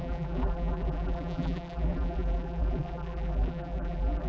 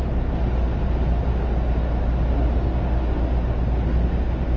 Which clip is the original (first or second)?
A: second